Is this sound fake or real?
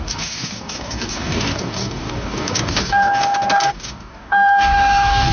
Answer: fake